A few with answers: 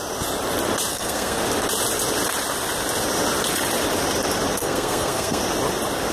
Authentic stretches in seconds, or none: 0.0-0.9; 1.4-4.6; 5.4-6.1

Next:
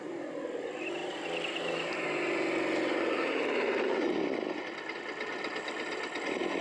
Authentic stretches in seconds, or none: 0.0-6.6

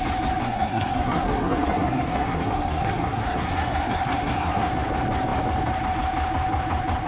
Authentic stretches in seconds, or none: 0.0-0.4; 4.7-7.1

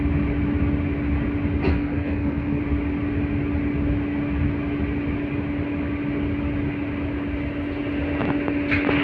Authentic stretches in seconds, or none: 0.0-1.7; 2.6-9.0

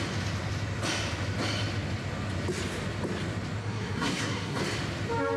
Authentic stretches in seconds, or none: 0.0-3.6; 4.6-5.4